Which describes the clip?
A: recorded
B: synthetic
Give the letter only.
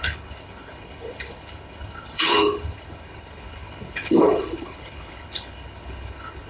B